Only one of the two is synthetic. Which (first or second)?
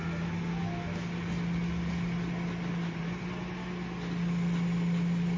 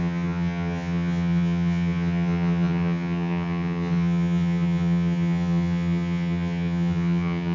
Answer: second